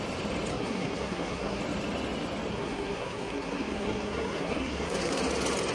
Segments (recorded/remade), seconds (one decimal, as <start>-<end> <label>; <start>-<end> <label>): 0.0-0.5 recorded; 0.5-1.6 remade; 1.6-2.5 recorded; 2.5-5.2 remade; 5.2-5.7 recorded